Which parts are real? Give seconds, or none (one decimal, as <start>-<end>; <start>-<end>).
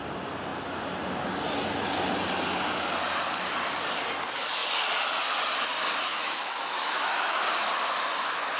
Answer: 0.0-6.1; 7.4-8.6